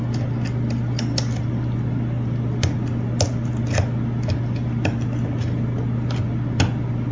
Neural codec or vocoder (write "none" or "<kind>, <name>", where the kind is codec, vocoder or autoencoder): none